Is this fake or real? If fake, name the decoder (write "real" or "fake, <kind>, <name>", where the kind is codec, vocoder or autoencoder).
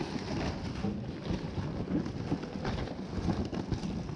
real